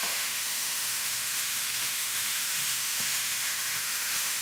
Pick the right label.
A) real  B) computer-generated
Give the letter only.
B